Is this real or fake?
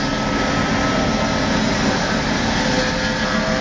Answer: real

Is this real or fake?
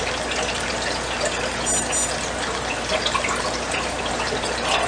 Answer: real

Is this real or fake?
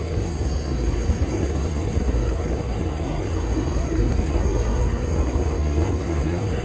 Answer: fake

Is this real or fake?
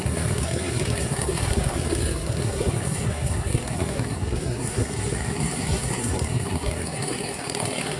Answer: fake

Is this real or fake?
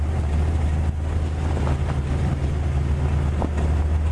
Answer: real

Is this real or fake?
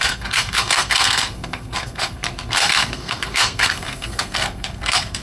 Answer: fake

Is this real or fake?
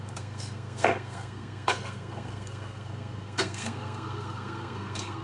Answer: fake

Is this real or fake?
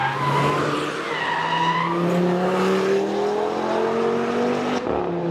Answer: real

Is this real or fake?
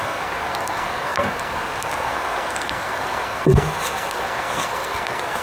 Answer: fake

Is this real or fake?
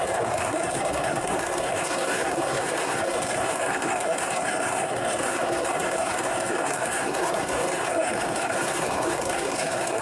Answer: fake